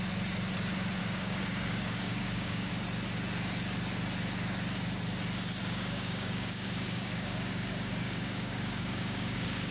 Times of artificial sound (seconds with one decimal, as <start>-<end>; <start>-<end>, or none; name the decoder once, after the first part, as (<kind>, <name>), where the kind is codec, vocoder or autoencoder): 1.0-2.7 (codec, DAC); 5.6-9.7